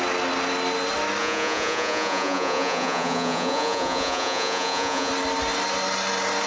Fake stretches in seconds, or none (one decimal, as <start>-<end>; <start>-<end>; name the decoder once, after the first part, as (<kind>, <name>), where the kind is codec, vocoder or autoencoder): 1.2-5.1 (vocoder, Vocos)